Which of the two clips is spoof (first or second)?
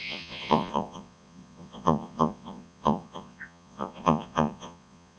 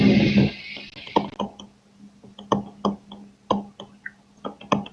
first